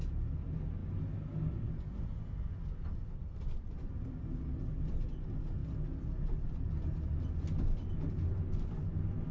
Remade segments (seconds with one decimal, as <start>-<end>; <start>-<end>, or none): none